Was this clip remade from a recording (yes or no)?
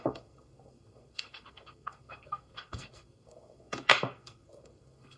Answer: yes